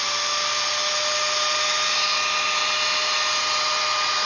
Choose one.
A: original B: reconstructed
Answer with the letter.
A